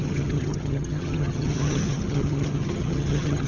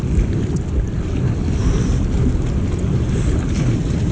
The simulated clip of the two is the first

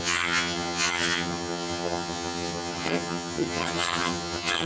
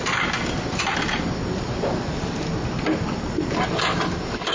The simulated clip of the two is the first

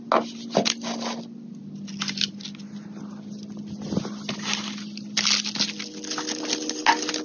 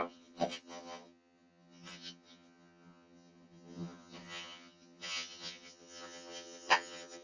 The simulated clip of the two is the second